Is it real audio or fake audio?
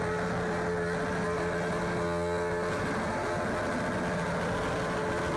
real